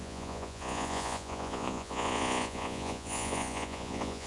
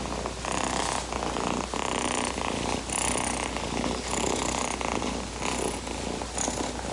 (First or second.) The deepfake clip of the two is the first